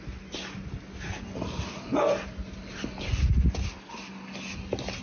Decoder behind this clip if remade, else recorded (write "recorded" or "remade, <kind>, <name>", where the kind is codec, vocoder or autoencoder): recorded